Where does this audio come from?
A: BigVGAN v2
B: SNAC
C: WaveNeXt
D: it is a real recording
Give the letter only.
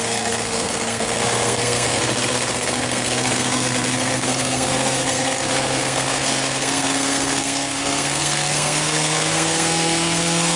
B